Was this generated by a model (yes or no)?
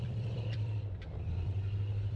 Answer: yes